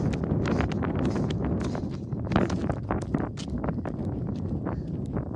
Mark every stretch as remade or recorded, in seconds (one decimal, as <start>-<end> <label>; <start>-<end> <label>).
0.0-5.4 recorded